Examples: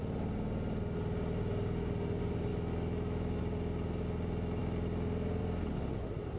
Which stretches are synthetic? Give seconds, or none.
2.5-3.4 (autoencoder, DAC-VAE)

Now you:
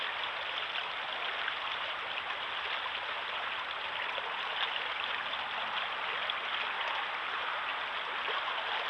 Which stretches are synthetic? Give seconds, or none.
none

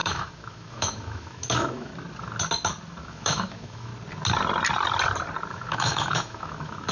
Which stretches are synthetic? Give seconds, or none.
0.0-1.9 (autoencoder, DAC-VAE); 3.0-3.9; 5.5-6.9

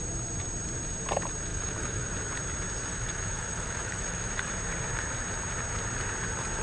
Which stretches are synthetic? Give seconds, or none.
1.5-2.1 (autoencoder, DAC-VAE); 2.9-4.5

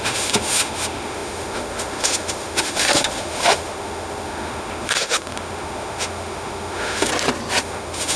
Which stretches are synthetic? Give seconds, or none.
0.0-7.1 (autoencoder, DAC-VAE); 7.6-8.2